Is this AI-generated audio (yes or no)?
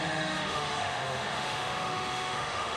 yes